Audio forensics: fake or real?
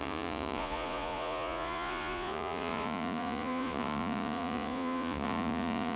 fake